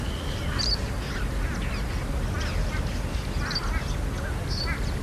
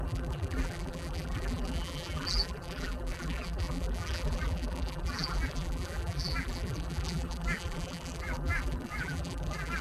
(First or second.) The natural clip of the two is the first